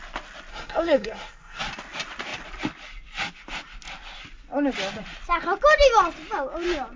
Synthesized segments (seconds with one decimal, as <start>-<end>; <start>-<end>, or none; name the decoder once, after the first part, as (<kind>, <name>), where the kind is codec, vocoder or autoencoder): 0.5-1.6 (codec, SNAC)